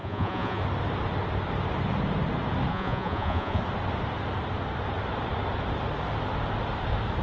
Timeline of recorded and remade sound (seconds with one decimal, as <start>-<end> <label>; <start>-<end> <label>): 0.0-0.6 remade; 0.6-2.7 recorded; 2.7-3.6 remade; 3.6-7.2 recorded